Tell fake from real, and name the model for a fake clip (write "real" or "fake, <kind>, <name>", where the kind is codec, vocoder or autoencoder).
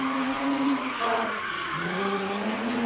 fake, vocoder, Vocos